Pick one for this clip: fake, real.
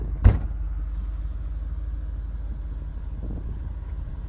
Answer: real